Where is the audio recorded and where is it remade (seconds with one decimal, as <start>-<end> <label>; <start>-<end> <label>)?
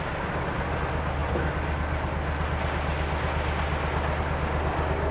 0.0-5.1 recorded